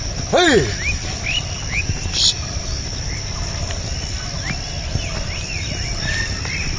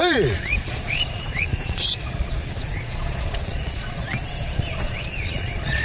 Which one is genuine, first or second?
first